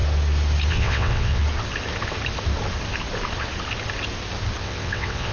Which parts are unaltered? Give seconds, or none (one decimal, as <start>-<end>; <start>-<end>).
0.0-0.7; 1.4-4.6